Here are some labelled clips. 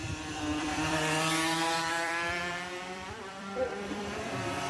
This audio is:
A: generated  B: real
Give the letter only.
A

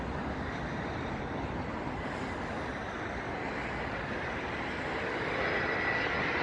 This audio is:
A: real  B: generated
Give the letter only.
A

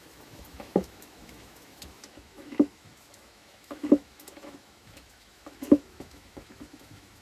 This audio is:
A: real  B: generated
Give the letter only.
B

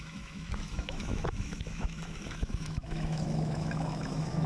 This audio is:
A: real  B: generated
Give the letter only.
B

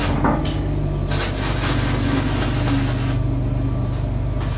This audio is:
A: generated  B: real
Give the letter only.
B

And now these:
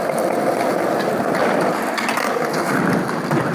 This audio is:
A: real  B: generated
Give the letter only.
A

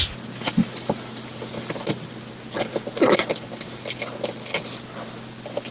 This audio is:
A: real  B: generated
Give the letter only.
A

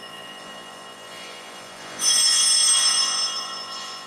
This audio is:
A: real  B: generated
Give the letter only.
B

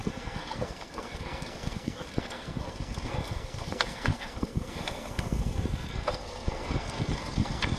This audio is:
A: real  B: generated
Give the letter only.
B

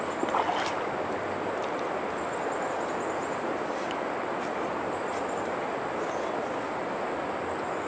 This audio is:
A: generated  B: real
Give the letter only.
B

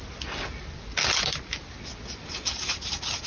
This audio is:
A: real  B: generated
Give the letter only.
A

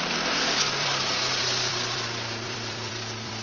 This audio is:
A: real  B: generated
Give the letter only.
B